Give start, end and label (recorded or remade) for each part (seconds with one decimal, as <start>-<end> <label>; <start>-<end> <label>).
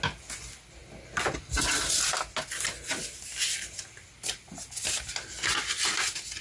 0.0-6.4 recorded